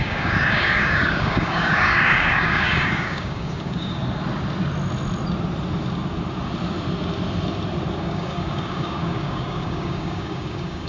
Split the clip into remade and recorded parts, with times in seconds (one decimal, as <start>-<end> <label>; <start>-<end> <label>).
0.0-4.0 remade; 4.0-8.0 recorded; 8.0-10.9 remade